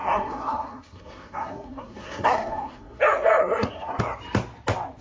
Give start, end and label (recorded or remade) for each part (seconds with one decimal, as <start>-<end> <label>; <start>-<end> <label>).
0.0-3.0 remade; 3.0-3.4 recorded; 3.4-4.0 remade; 4.0-5.0 recorded